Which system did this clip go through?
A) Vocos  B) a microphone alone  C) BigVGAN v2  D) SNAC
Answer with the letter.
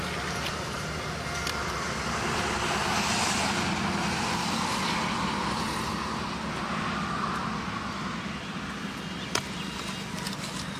B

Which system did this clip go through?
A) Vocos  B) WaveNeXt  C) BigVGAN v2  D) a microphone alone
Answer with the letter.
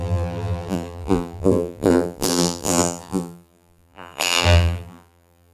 C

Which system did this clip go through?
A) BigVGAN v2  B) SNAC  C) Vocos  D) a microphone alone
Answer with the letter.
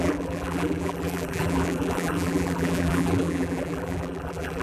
A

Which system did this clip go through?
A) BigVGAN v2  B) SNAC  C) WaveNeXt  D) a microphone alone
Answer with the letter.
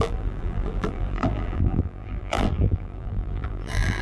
A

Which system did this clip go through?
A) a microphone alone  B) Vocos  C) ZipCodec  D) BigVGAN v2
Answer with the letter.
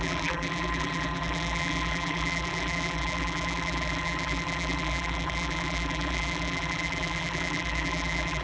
D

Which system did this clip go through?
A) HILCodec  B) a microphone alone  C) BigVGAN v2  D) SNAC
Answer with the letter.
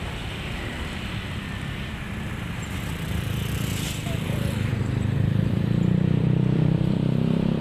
C